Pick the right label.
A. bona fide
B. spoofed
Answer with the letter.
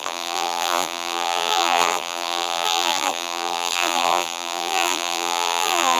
B